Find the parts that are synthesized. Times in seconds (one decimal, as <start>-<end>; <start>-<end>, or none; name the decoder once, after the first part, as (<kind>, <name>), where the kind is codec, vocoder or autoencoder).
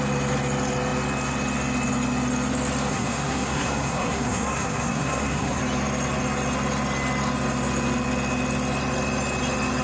2.9-5.6 (codec, SNAC)